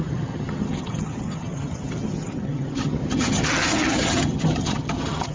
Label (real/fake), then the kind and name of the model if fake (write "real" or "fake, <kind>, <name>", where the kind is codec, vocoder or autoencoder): fake, vocoder, HiFi-GAN